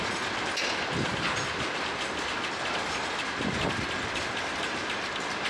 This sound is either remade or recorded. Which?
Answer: recorded